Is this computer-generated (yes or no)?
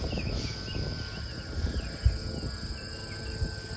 no